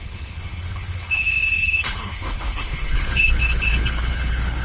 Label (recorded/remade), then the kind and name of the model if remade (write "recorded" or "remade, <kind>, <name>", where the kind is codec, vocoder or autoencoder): remade, codec, HILCodec